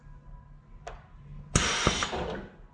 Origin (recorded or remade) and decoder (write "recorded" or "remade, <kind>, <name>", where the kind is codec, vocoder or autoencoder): recorded